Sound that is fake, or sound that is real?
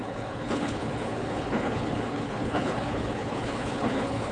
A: fake